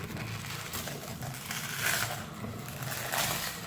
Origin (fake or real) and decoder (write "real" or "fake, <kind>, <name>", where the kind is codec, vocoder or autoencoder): real